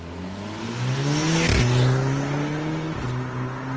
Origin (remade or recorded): recorded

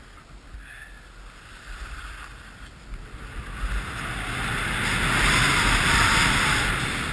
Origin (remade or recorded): recorded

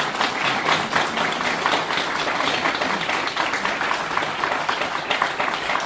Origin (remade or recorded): recorded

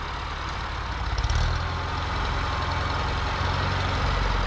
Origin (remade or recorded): recorded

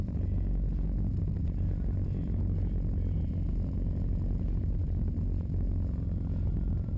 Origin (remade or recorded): recorded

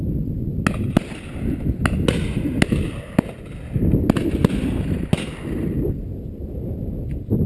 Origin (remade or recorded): recorded